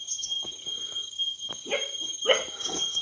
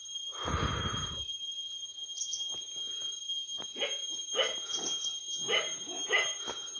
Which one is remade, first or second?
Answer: first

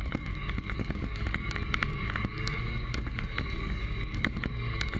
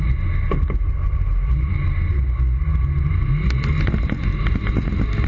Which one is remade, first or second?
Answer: first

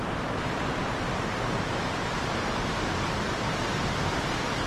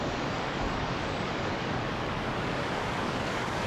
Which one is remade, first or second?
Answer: second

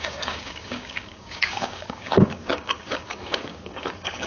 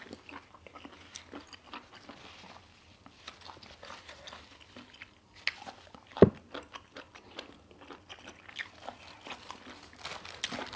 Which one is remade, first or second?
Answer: first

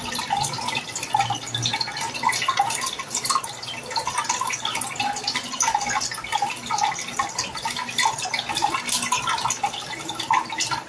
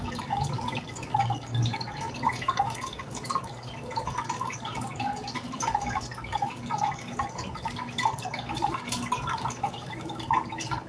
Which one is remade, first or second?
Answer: second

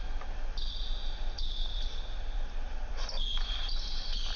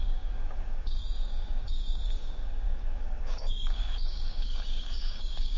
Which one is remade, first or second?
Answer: second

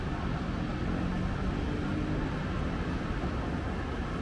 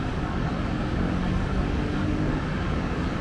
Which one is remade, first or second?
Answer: second